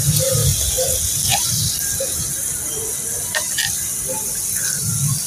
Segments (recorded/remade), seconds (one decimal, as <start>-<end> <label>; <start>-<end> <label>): 0.0-5.3 recorded